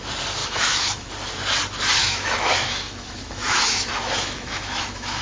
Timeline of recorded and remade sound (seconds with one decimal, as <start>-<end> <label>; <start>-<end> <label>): 0.0-0.4 recorded; 0.4-1.1 remade; 1.1-2.0 recorded; 2.0-5.2 remade

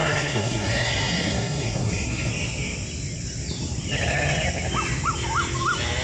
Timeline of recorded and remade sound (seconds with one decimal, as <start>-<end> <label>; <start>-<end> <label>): 0.0-2.3 remade; 2.3-6.0 recorded

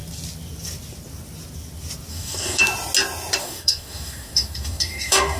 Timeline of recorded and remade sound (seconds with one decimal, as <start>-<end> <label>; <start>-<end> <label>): 0.0-2.1 recorded; 2.1-2.6 remade; 2.6-3.4 recorded; 3.4-5.4 remade

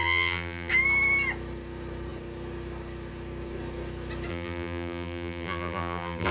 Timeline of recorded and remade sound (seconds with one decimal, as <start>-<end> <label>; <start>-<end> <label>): 0.0-0.7 remade; 0.7-4.3 recorded; 4.3-6.3 remade

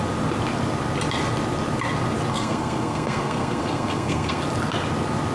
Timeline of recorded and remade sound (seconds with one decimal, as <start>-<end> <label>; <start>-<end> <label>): 0.0-2.3 recorded; 2.3-4.4 remade; 4.4-5.3 recorded

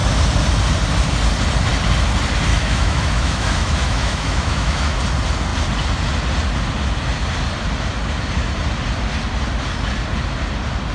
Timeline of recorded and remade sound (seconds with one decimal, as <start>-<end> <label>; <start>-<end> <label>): 0.0-2.5 recorded; 2.5-5.0 remade; 5.0-10.9 recorded

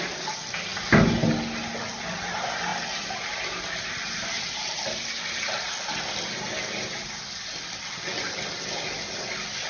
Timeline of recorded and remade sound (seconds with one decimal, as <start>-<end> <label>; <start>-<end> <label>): 0.0-9.7 recorded